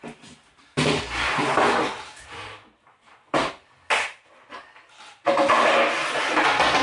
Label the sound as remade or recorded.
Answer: recorded